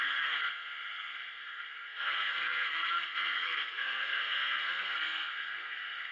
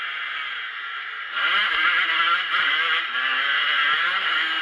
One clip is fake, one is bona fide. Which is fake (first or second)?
first